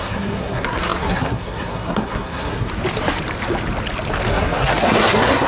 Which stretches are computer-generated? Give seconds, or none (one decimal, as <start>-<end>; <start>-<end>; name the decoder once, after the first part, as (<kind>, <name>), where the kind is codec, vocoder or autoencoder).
0.0-2.7 (codec, SNAC); 4.3-5.5